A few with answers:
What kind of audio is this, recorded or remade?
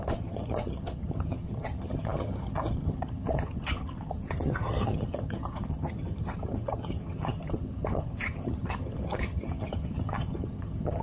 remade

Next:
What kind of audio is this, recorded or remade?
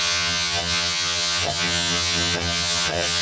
remade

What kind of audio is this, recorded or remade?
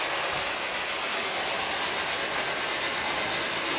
recorded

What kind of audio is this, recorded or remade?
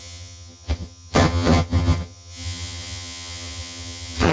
remade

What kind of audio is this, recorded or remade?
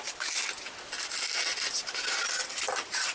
recorded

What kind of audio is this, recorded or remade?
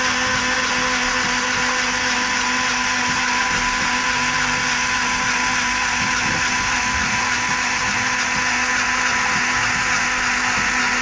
recorded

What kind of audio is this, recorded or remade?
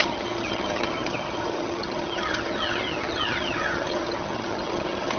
remade